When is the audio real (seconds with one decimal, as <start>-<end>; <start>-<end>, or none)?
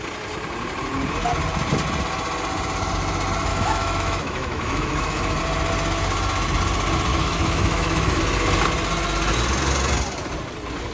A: 0.0-3.5; 5.4-7.1; 8.2-10.9